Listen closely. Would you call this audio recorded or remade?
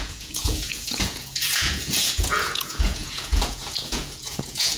remade